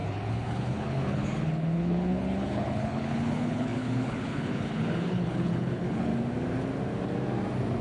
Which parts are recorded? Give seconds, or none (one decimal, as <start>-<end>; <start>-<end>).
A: 6.1-7.8